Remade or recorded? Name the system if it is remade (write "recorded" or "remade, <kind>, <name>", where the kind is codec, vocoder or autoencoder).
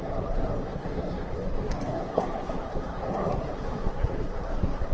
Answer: remade, codec, SNAC